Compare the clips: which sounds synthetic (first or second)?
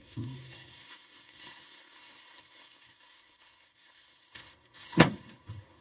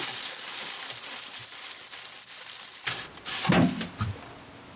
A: first